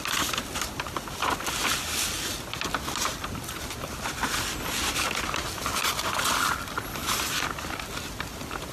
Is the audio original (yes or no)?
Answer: yes